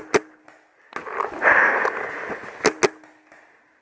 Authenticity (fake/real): real